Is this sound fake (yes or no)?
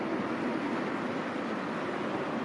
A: no